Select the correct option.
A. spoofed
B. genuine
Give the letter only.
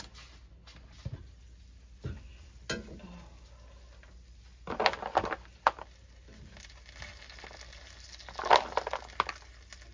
B